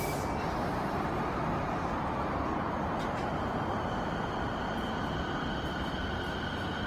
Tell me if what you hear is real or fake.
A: real